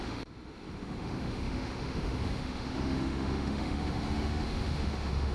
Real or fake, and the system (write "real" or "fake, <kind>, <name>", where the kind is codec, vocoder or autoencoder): fake, autoencoder, DAC-VAE